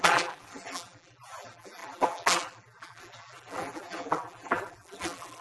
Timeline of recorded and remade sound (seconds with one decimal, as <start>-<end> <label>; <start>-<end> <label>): 0.0-5.4 remade